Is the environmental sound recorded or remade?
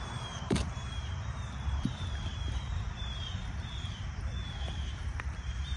remade